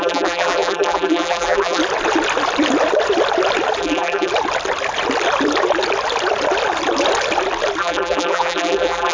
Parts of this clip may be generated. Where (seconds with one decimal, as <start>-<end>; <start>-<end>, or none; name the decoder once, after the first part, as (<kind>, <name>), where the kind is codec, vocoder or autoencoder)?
0.0-1.8 (vocoder, BigVGAN v2); 3.8-4.3; 7.8-9.1